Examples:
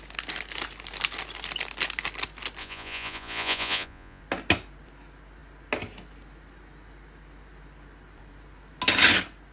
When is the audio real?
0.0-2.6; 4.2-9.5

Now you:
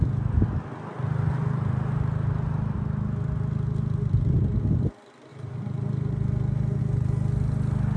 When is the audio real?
0.0-5.3; 6.8-8.0

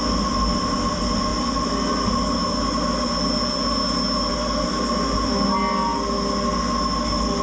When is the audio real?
0.0-7.4

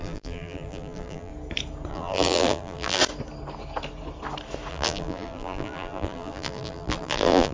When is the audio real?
1.3-1.9; 3.0-4.7

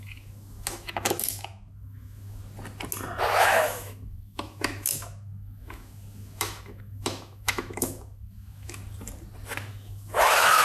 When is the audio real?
2.4-3.4; 8.8-9.7

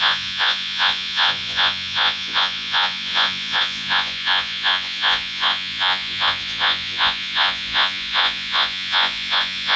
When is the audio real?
none

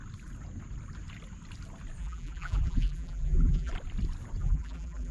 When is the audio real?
0.0-2.0; 3.7-4.4